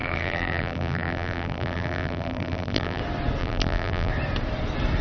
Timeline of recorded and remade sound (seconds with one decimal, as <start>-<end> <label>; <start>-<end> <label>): 0.0-3.0 remade; 3.0-3.4 recorded; 3.4-4.1 remade; 4.1-5.0 recorded